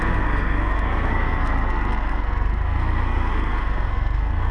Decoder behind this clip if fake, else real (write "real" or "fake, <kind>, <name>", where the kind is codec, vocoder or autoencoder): fake, codec, SNAC